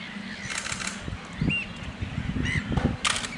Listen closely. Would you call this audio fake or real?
real